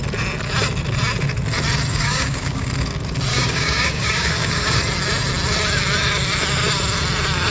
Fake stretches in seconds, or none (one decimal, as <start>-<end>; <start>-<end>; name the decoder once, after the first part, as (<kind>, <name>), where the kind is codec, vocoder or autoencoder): 1.9-2.7 (codec, DAC); 3.3-4.8